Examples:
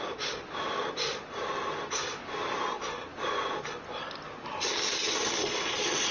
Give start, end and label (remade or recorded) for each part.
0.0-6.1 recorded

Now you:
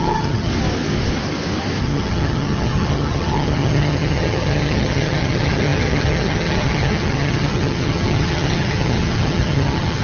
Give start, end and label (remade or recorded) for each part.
0.0-0.5 remade; 0.5-1.8 recorded; 1.8-10.0 remade

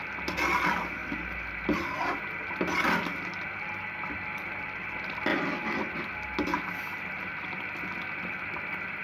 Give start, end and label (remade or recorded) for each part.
0.0-5.3 remade; 5.3-7.0 recorded; 7.0-9.0 remade

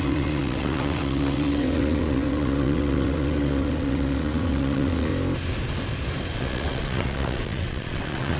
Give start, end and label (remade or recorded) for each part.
0.0-5.1 remade; 5.1-6.3 recorded; 6.3-8.4 remade

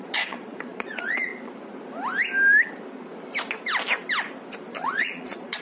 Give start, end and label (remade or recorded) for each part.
0.0-1.3 remade; 1.3-4.7 recorded; 4.7-5.6 remade